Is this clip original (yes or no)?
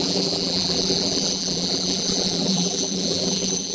no